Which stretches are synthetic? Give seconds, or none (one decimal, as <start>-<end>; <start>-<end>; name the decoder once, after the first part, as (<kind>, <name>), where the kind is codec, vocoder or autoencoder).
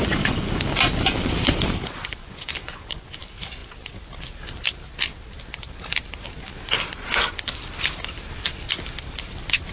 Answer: 0.0-0.6 (vocoder, Vocos); 2.2-3.2